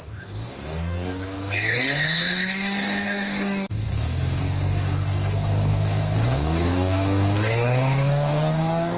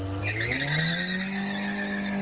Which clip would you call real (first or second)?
second